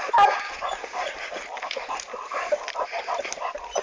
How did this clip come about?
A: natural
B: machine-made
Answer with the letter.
A